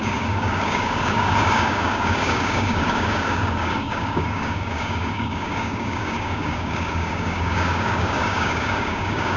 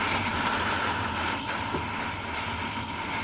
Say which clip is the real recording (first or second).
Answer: second